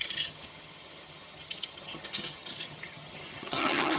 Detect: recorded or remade remade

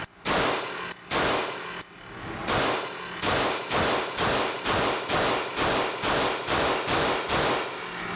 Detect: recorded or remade recorded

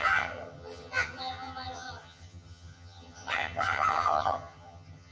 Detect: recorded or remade remade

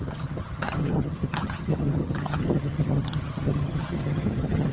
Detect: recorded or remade remade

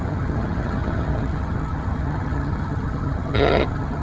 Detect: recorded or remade remade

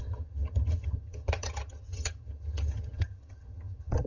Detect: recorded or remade remade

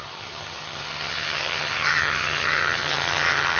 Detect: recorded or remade remade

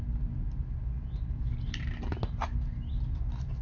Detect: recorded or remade recorded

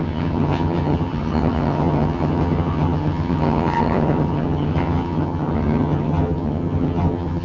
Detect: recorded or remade remade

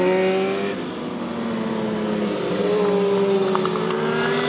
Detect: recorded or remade recorded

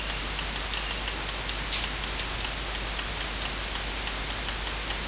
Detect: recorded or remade recorded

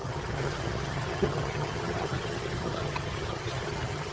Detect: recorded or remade remade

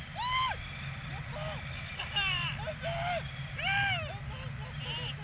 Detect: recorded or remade recorded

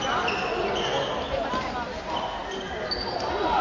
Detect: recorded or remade recorded